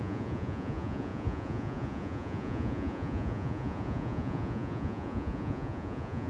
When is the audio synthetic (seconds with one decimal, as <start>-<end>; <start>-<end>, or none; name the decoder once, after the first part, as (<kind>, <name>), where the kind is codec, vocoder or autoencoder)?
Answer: 0.0-6.3 (vocoder, Vocos)